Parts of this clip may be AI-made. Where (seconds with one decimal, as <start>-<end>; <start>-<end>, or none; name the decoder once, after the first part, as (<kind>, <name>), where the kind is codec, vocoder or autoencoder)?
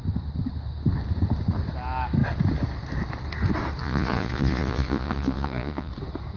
3.8-5.9 (vocoder, Vocos)